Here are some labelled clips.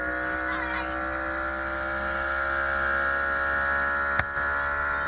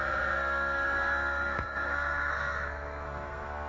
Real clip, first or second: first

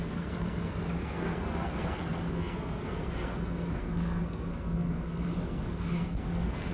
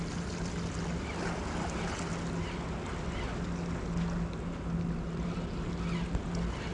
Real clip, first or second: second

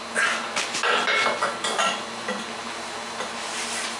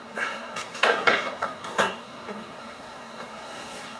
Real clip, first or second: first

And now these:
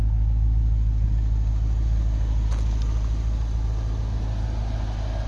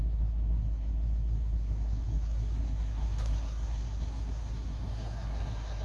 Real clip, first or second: first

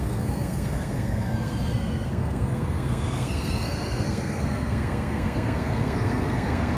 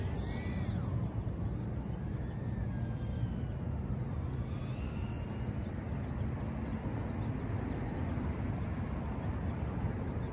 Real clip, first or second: second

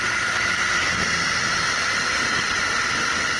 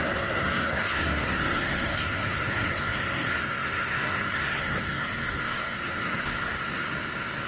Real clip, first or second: first